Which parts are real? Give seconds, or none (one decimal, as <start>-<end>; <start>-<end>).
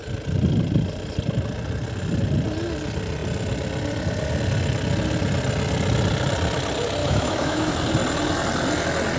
0.0-7.0; 7.7-9.2